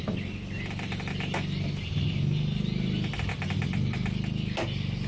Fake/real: real